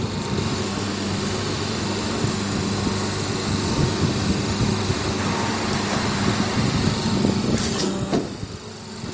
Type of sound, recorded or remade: recorded